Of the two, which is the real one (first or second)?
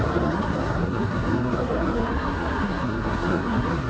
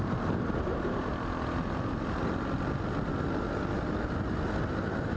second